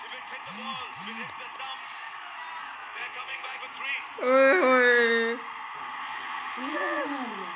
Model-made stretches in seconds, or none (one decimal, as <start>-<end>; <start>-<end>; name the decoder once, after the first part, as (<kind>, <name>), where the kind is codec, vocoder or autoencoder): 2.8-3.6 (vocoder, Vocos); 6.0-7.0